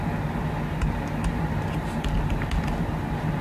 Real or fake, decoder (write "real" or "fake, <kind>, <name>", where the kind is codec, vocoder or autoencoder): real